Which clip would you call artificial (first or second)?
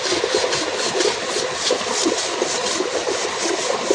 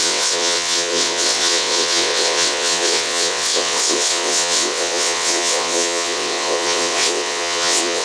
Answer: second